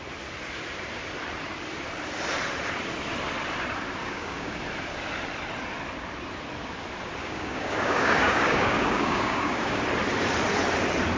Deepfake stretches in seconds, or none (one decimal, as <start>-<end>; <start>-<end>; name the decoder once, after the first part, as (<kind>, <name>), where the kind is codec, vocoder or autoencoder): 4.0-4.6 (codec, DAC); 7.2-9.8